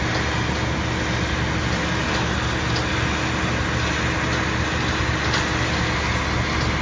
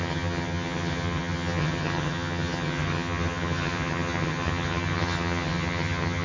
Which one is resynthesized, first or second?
second